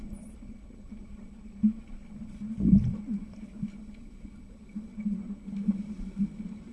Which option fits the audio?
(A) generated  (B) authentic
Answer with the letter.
B